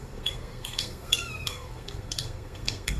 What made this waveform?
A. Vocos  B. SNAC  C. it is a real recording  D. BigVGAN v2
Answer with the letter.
B